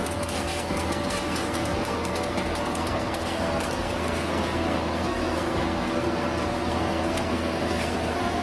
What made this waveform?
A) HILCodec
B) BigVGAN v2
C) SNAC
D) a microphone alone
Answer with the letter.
C